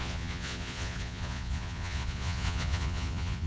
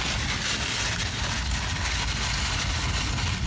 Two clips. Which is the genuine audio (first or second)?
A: second